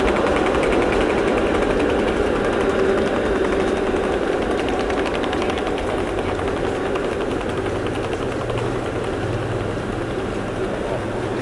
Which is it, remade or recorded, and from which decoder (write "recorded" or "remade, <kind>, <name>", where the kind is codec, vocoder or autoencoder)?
recorded